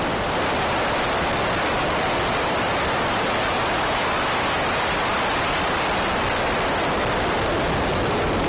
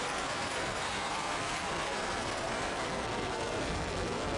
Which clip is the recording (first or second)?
first